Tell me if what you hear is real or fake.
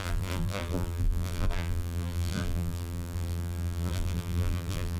fake